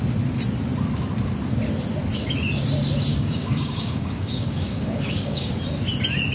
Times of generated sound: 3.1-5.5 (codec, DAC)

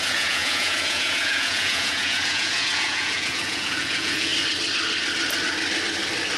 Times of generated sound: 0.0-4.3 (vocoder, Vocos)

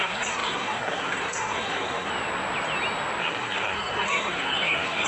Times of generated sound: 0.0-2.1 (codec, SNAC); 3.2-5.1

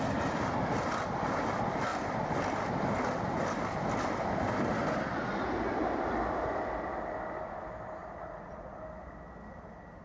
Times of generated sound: 8.0-8.8 (vocoder, Vocos)